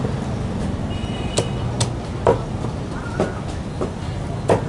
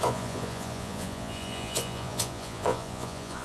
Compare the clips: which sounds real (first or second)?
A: first